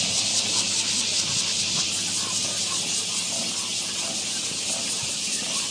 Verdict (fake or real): real